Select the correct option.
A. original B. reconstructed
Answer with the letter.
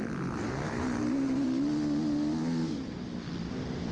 A